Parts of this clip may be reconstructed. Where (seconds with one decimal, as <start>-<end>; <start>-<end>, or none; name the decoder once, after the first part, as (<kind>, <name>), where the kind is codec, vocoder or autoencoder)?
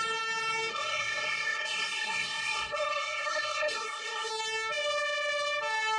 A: 0.7-4.3 (codec, SNAC)